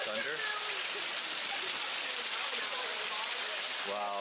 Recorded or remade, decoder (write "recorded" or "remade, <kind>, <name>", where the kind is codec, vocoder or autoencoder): recorded